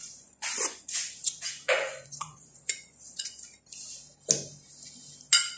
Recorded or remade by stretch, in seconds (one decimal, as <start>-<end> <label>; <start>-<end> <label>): 0.0-3.4 remade; 3.4-5.6 recorded